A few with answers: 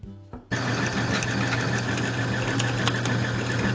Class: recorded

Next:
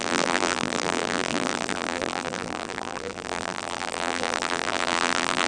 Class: remade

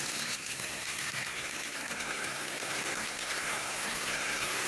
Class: remade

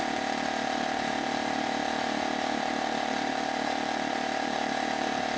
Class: remade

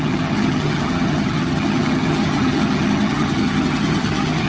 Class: remade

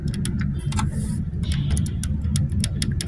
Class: recorded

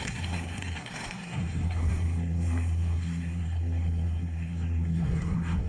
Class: remade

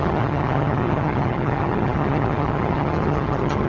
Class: remade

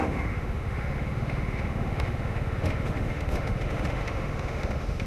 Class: remade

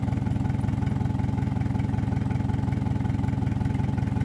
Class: recorded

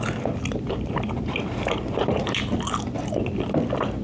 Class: recorded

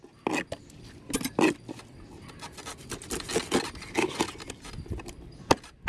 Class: recorded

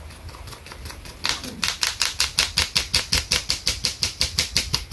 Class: recorded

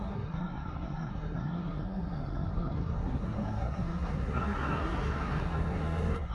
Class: remade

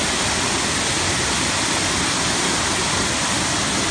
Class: recorded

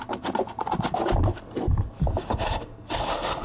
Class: recorded